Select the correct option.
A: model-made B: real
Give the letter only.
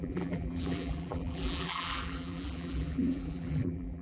A